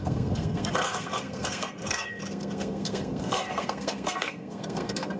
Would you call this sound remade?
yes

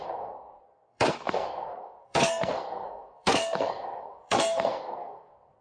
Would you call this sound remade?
yes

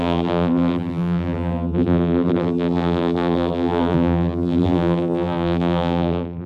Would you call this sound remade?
yes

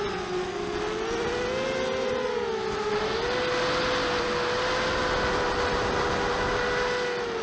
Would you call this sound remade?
no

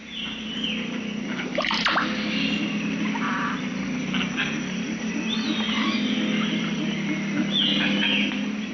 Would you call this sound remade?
no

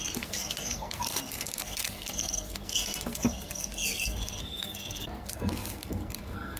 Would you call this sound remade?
yes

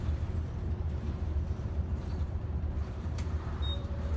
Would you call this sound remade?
yes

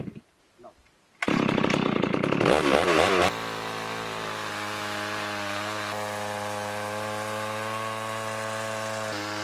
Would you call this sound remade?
no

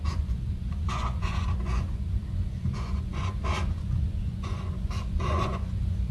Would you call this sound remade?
yes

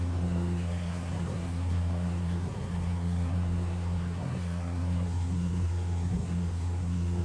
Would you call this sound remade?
yes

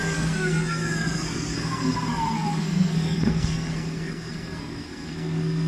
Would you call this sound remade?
yes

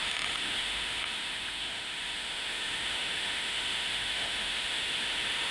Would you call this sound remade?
yes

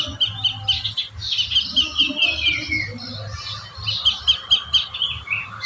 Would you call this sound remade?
no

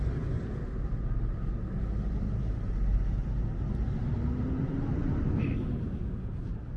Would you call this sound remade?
no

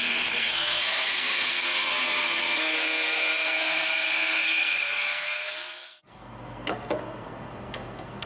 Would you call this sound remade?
yes